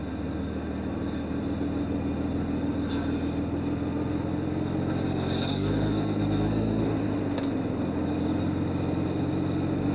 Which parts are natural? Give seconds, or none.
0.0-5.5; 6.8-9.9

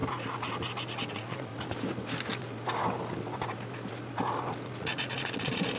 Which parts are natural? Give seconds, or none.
0.0-1.1; 1.5-4.8

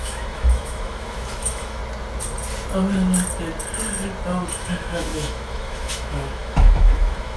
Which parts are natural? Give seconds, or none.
1.8-4.5

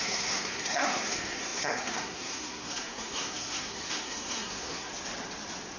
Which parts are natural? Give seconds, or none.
4.9-5.8